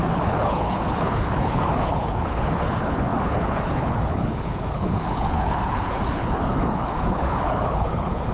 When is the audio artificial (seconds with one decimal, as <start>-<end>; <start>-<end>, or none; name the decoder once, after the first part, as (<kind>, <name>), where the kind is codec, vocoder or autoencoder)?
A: 0.0-8.3 (codec, HILCodec)